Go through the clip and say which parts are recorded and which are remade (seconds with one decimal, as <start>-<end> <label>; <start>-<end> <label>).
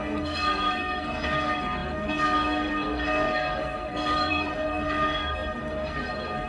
0.0-6.5 remade